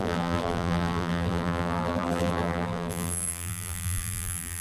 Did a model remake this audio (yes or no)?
yes